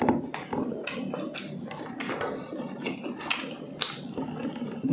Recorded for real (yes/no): yes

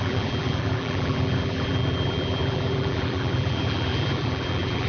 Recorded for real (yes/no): no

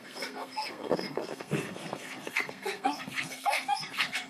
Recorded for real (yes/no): no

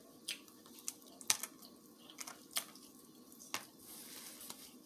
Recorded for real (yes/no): yes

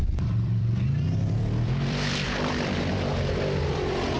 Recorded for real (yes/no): no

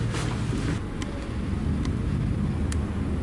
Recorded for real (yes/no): yes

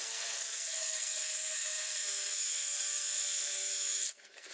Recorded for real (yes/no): no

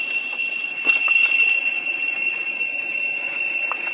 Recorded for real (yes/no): no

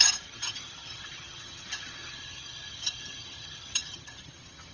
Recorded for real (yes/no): no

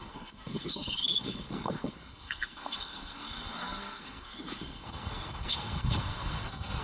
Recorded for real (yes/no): no